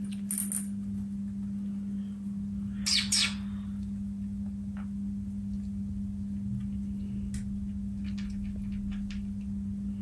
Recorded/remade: recorded